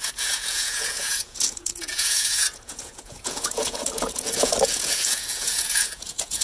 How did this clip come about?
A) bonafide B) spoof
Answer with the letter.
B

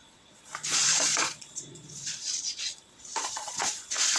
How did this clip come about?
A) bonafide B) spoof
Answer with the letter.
B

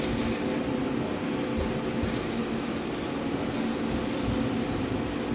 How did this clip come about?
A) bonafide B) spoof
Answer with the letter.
A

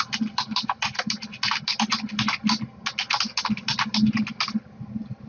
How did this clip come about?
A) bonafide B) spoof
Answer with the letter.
A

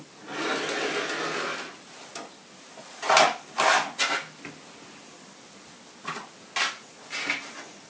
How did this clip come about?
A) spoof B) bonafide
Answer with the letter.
B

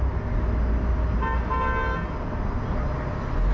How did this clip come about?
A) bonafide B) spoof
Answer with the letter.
A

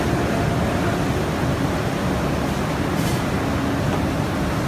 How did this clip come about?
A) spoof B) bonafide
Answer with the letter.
B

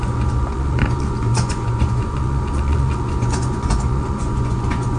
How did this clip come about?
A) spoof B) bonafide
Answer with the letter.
A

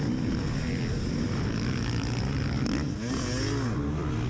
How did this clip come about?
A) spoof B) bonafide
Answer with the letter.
B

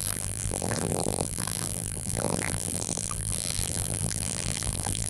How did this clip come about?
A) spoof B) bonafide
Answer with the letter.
A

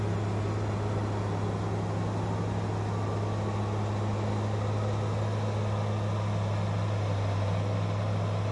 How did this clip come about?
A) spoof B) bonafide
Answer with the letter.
B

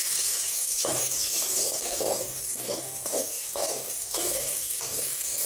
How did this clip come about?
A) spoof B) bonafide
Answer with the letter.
A